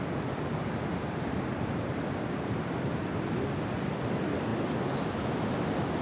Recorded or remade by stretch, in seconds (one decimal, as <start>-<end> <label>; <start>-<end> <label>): 0.0-6.0 recorded